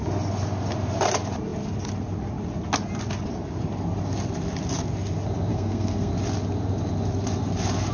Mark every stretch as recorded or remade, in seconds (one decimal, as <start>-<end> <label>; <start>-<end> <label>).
0.0-5.5 recorded; 5.5-6.1 remade; 6.1-7.9 recorded